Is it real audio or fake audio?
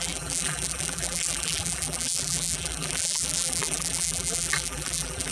fake